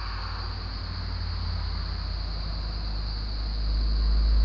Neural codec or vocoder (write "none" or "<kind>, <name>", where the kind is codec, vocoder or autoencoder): none